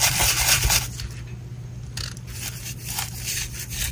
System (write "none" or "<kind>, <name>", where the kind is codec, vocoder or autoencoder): none